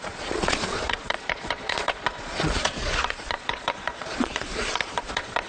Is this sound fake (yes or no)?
yes